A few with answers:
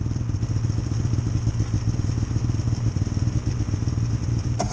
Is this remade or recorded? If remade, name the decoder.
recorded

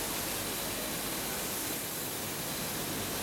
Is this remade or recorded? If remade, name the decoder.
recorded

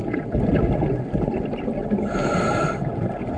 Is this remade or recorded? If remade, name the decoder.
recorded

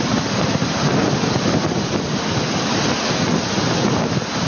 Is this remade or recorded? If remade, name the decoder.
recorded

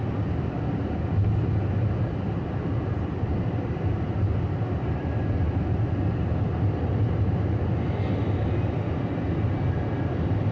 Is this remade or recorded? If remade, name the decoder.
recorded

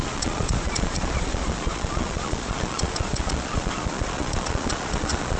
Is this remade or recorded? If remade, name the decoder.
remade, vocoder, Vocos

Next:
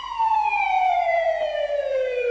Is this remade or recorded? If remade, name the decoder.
remade, vocoder, Vocos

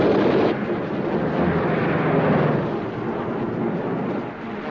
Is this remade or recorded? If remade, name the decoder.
recorded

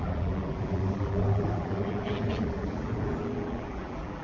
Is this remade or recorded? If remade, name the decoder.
remade, vocoder, BigVGAN v2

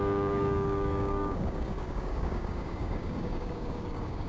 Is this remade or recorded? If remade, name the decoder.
remade, codec, DAC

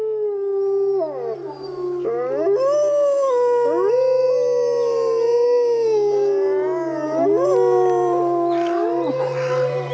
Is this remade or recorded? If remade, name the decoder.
recorded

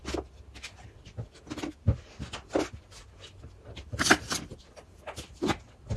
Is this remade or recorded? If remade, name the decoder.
recorded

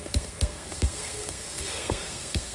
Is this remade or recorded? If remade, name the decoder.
remade, codec, SNAC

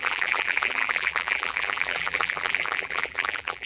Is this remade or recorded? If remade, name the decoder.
remade, vocoder, BigVGAN v2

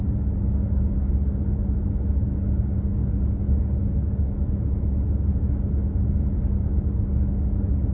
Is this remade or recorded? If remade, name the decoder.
recorded